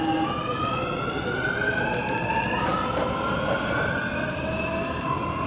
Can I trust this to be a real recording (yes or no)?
yes